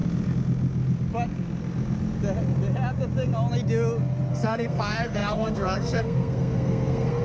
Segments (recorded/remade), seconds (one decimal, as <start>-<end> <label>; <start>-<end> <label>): 0.0-4.3 recorded; 4.3-7.2 remade